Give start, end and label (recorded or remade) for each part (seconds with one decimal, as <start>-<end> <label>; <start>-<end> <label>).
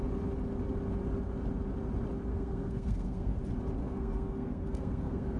0.0-2.3 recorded; 2.3-3.4 remade; 3.4-3.8 recorded; 3.8-5.4 remade